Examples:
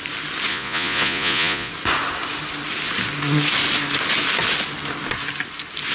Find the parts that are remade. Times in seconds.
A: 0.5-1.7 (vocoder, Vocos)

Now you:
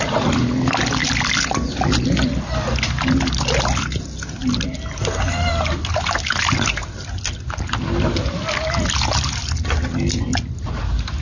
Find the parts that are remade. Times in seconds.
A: none

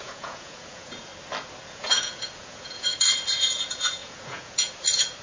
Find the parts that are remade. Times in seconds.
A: 0.0-1.1 (vocoder, Vocos); 1.7-2.9; 3.4-5.2

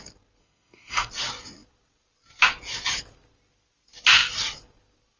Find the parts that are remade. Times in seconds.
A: 0.4-1.1 (codec, SNAC)

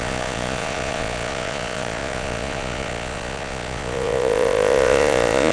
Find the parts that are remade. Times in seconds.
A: 0.0-5.5 (vocoder, Vocos)

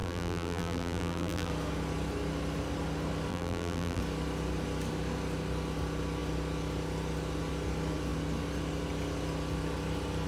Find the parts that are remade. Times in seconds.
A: 0.0-1.5 (vocoder, BigVGAN v2); 3.3-4.0

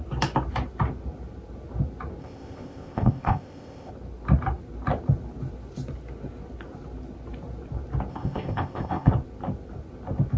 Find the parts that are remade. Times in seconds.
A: 2.2-3.9 (codec, ZipCodec); 8.1-9.1